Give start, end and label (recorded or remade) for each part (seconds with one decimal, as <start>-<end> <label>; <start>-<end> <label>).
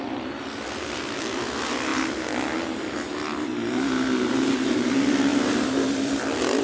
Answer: 0.0-5.3 recorded; 5.3-6.1 remade; 6.1-6.6 recorded